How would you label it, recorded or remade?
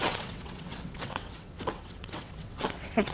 remade